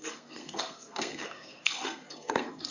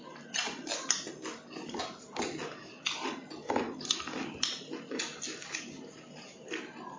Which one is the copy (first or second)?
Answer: first